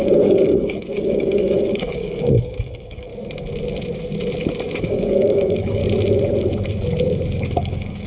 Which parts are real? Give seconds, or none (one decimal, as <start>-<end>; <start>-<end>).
3.1-4.8; 5.8-7.6